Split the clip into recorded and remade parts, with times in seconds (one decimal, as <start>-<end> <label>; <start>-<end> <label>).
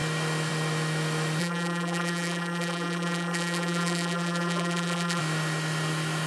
0.0-1.4 recorded; 1.4-5.2 remade; 5.2-6.3 recorded